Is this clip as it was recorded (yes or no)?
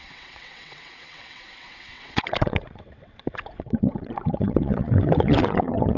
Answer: no